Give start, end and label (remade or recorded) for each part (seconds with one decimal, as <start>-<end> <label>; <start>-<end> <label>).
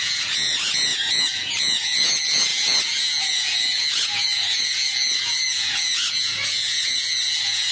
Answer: 0.0-7.7 remade